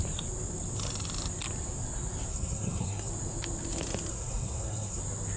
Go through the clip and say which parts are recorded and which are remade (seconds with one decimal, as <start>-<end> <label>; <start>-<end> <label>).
0.0-2.3 recorded; 2.3-3.1 remade; 3.1-4.1 recorded; 4.1-5.0 remade; 5.0-5.4 recorded